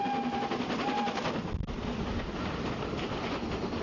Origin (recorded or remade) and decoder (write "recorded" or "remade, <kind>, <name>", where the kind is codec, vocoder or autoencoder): recorded